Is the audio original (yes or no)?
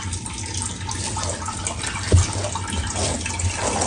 yes